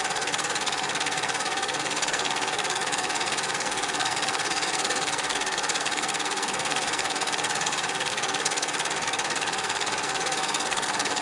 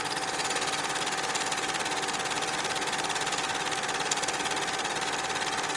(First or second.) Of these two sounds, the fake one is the first